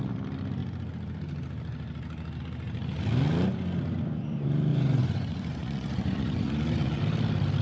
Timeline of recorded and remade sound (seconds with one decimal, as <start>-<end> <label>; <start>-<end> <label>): 0.0-4.7 recorded; 4.7-7.0 remade; 7.0-7.6 recorded